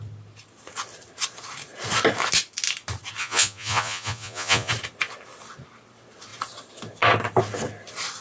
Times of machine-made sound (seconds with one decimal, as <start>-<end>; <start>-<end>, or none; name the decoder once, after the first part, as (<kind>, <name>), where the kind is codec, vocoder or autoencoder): 3.2-4.7 (vocoder, Vocos)